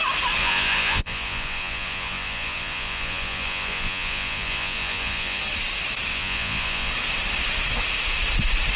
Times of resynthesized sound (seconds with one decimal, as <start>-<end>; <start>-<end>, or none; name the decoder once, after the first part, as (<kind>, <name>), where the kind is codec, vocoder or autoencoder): 0.4-5.4 (vocoder, Vocos); 6.1-6.9